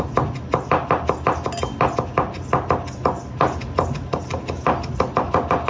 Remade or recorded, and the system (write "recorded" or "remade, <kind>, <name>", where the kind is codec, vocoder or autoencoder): recorded